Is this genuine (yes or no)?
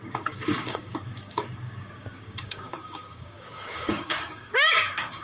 no